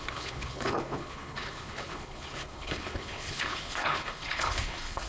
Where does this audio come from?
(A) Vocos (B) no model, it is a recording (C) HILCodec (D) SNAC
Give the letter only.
C